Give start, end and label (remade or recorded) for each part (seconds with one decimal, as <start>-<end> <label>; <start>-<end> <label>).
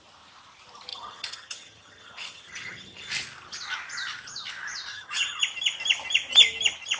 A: 0.0-0.9 recorded; 0.9-3.1 remade; 3.1-4.9 recorded; 4.9-5.4 remade; 5.4-7.0 recorded